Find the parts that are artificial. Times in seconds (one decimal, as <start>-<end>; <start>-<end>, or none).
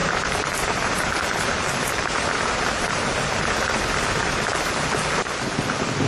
0.0-3.7